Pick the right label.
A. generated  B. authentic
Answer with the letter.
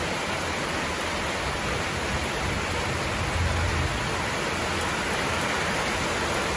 B